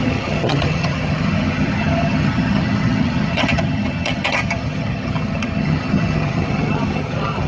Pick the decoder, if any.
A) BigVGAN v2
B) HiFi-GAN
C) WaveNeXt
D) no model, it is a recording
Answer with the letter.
B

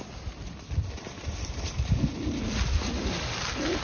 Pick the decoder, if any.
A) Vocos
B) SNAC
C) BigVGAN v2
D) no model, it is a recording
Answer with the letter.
D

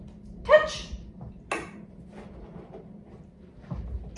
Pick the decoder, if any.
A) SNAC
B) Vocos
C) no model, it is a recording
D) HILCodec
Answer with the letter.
C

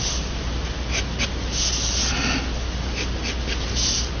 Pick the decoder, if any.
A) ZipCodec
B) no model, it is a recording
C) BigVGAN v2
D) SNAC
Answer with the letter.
B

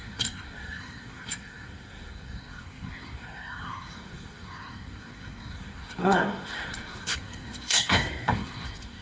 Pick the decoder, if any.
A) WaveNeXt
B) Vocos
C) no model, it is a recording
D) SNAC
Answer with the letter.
D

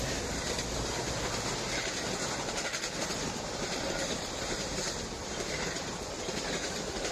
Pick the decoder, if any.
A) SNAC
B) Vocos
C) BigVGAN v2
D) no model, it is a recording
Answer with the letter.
C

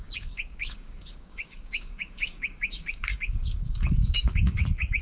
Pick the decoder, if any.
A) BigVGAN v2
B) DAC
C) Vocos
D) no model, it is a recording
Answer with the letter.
B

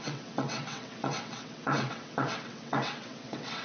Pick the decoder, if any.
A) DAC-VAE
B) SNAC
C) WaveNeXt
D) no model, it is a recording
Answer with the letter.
C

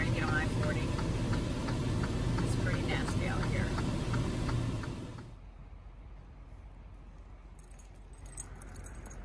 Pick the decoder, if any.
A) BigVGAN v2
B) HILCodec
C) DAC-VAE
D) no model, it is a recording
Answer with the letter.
D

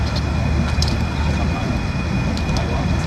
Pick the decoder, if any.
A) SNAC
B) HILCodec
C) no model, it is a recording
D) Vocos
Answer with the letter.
C